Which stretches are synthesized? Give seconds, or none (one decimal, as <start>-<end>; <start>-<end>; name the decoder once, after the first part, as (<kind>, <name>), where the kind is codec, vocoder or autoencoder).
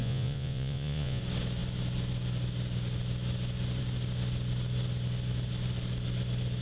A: 0.0-1.2 (vocoder, Vocos)